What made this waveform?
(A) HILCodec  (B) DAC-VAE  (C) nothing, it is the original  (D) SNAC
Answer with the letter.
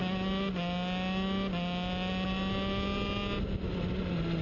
C